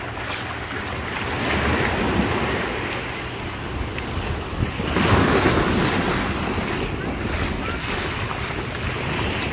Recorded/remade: recorded